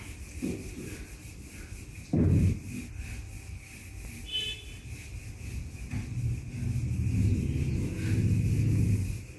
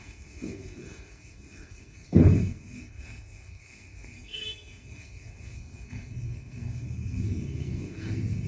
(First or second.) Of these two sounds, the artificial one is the second